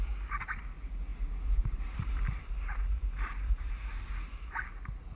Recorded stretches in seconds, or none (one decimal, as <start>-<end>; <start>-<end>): 0.0-1.1; 4.1-5.2